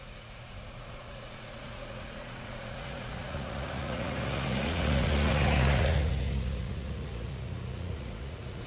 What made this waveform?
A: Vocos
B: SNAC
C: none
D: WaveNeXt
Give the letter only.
A